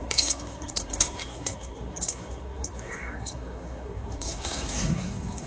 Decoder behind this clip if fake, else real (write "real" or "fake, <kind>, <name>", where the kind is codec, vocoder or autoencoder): fake, codec, SNAC